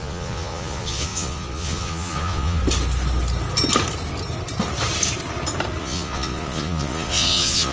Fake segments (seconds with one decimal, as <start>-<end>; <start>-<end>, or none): 0.0-2.6; 5.8-7.7